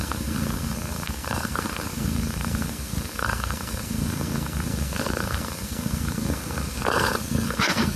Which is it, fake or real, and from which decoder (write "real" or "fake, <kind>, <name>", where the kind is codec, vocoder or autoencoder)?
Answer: fake, codec, SNAC